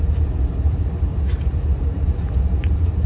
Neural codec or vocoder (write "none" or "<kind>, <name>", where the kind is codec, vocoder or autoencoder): vocoder, BigVGAN v2